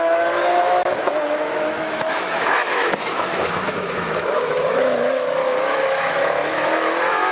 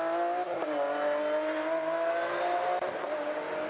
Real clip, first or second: second